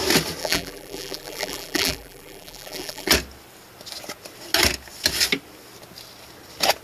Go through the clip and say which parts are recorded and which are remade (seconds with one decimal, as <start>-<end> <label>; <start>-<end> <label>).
0.0-0.4 recorded; 0.4-3.1 remade; 3.1-6.8 recorded